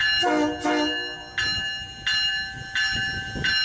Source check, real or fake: real